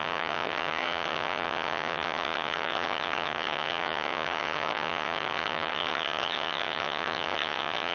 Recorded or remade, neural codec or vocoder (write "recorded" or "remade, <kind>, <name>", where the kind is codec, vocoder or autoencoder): remade, vocoder, HiFi-GAN